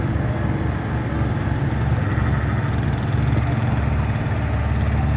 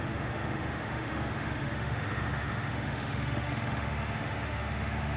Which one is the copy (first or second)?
second